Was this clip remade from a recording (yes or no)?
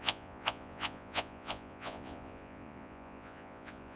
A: yes